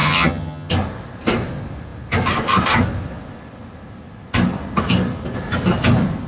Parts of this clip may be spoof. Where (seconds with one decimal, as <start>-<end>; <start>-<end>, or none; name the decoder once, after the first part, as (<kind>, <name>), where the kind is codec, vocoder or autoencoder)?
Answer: 0.0-0.7 (vocoder, HiFi-GAN)